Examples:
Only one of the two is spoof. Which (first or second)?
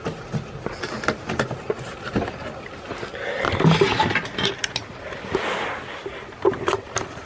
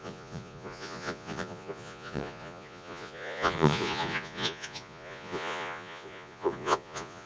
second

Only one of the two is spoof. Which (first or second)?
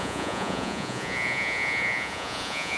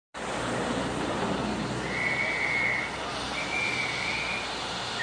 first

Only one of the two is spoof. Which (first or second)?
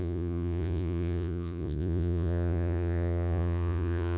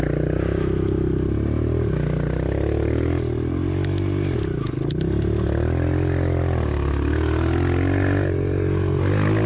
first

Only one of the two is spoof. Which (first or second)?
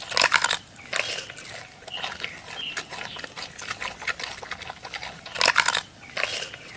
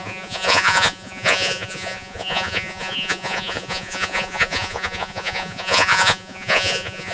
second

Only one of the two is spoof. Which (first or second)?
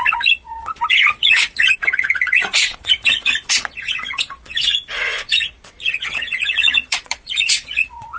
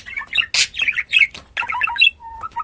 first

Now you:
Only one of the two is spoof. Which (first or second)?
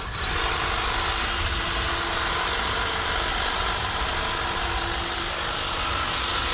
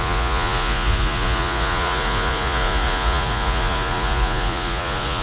second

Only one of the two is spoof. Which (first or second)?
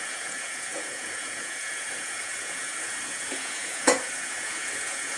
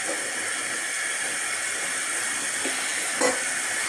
first